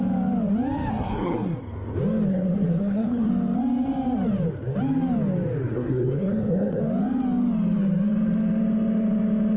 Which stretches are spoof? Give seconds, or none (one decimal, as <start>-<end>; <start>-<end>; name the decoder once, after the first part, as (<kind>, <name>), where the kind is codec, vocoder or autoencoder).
0.9-1.6 (codec, SNAC); 2.3-3.3; 5.7-6.8